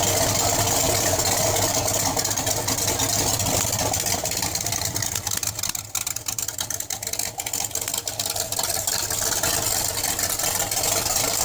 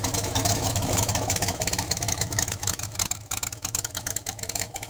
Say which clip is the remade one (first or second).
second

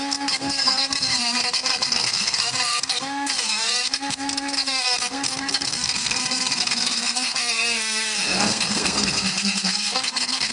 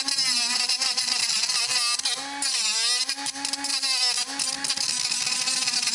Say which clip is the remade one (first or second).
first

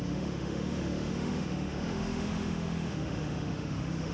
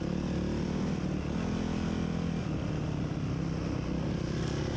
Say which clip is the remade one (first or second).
first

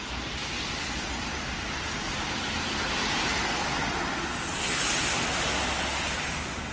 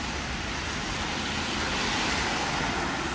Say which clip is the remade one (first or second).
second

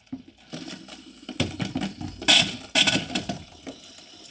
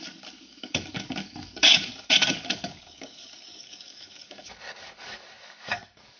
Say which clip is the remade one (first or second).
second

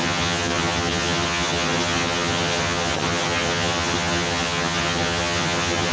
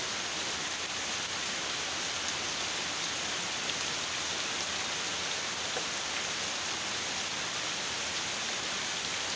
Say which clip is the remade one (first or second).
first